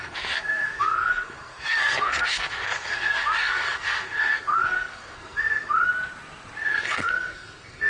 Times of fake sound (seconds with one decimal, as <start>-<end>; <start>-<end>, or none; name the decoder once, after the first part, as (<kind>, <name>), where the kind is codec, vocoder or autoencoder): 0.0-5.9 (codec, SNAC); 6.6-7.9